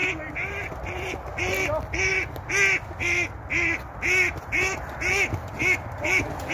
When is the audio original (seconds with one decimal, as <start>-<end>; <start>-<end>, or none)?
0.0-6.5